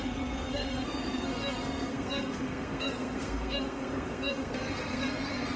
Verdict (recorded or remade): remade